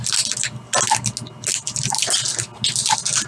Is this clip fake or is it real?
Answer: real